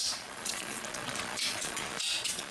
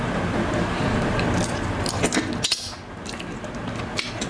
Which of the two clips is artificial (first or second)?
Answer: first